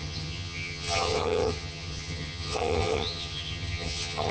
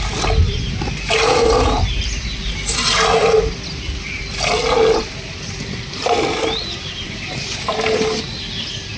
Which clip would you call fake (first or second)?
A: first